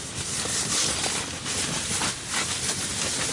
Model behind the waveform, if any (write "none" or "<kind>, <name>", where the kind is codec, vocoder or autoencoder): none